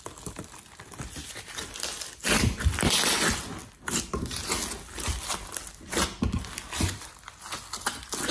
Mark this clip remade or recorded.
recorded